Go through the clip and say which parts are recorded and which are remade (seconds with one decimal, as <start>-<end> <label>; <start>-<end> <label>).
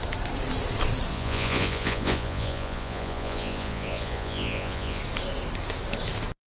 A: 0.0-1.1 recorded; 1.1-5.0 remade; 5.0-6.5 recorded